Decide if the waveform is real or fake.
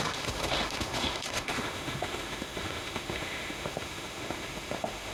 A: fake